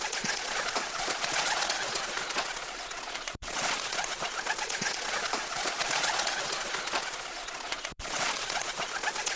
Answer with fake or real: fake